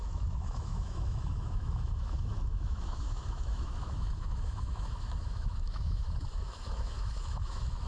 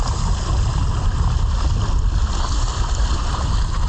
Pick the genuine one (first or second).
second